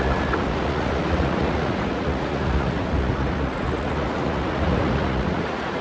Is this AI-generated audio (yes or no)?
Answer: yes